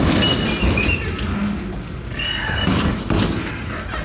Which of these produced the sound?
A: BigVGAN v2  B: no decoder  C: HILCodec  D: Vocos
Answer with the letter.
B